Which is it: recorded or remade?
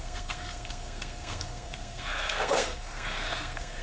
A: remade